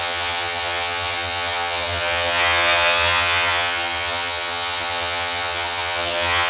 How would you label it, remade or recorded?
remade